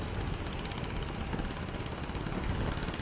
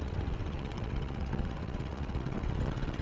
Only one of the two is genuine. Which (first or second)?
first